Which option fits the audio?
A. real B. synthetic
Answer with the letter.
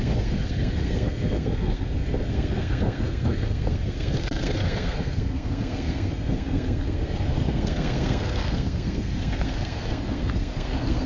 B